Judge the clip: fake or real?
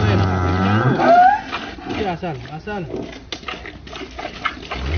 real